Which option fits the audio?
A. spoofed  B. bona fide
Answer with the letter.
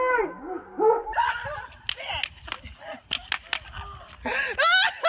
B